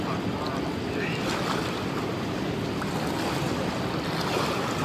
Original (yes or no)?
yes